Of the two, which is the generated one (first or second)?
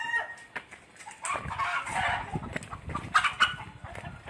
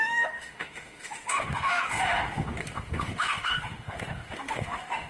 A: second